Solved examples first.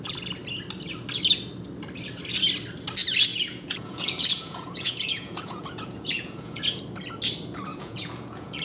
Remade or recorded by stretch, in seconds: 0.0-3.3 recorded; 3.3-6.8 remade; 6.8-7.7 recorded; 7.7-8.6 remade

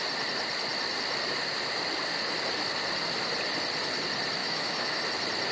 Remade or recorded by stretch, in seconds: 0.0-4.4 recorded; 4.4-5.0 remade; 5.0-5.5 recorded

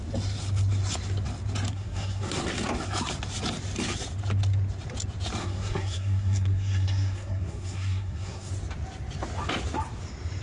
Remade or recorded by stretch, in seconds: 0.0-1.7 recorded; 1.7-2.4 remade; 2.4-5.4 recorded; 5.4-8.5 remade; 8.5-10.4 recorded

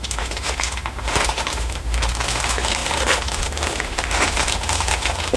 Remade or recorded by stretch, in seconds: 0.0-5.4 remade

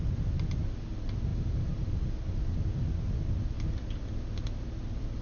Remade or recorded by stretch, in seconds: 0.0-5.2 recorded

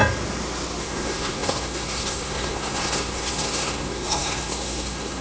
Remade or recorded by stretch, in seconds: 0.0-0.8 recorded; 0.8-5.2 remade

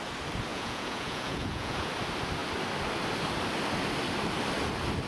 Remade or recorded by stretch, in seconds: 0.0-0.5 recorded; 0.5-1.9 remade; 1.9-5.1 recorded

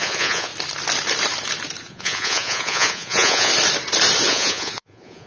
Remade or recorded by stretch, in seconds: 0.0-0.5 remade; 0.5-1.8 recorded; 1.8-3.5 remade; 3.5-4.3 recorded; 4.3-5.3 remade